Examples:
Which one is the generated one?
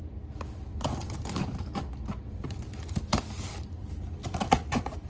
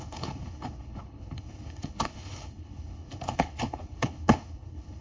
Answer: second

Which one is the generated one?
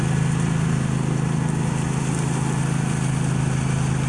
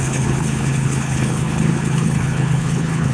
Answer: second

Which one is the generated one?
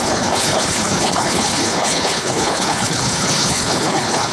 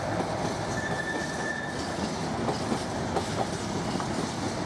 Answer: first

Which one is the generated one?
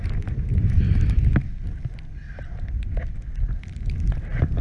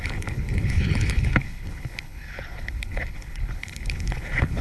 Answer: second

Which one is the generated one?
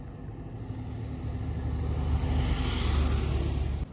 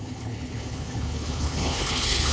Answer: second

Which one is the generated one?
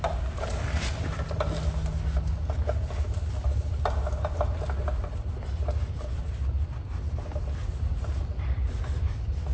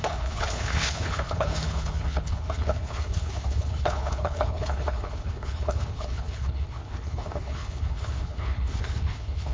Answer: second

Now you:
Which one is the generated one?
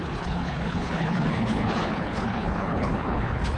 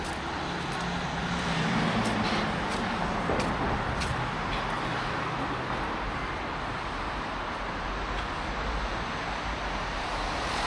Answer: first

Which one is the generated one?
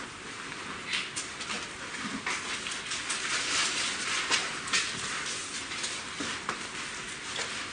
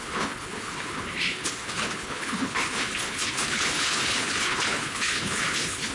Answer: second